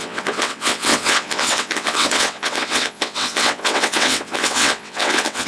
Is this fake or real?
fake